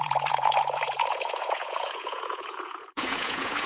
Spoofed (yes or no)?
yes